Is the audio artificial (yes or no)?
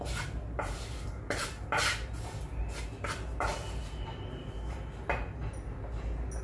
no